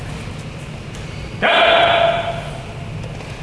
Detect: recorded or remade recorded